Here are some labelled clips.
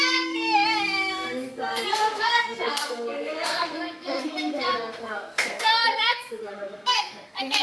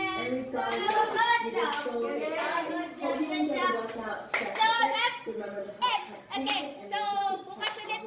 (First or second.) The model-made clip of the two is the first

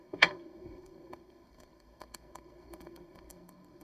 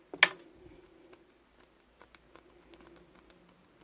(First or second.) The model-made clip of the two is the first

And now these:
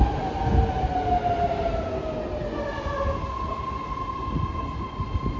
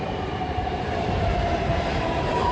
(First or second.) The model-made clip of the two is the second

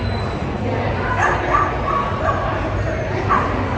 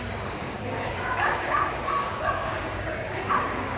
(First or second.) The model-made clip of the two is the second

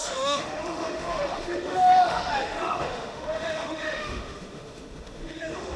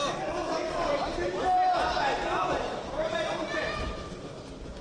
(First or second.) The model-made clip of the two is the first